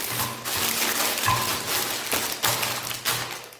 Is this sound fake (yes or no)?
no